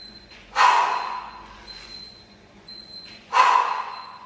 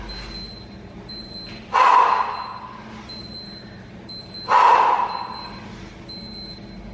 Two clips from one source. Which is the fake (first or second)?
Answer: first